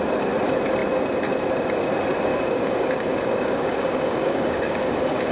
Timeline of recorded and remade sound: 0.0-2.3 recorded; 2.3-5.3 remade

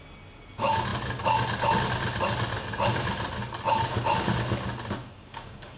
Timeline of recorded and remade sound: 0.0-5.0 recorded; 5.0-5.8 remade

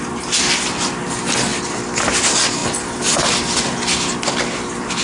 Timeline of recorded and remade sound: 0.0-5.0 recorded

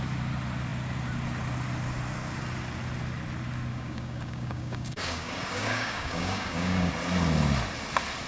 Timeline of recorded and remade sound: 0.0-3.7 recorded; 3.7-6.9 remade; 6.9-8.3 recorded

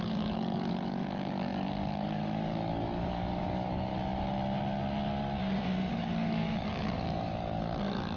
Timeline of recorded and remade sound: 0.0-3.9 remade; 3.9-5.9 recorded; 5.9-8.2 remade

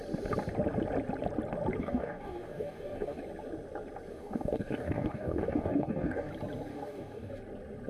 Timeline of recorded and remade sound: 0.0-1.8 recorded; 1.8-3.2 remade; 3.2-4.1 recorded; 4.1-6.3 remade; 6.3-6.7 recorded; 6.7-7.3 remade; 7.3-7.9 recorded

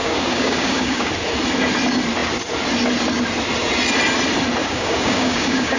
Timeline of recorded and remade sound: 0.0-1.1 remade; 1.1-4.6 recorded; 4.6-5.8 remade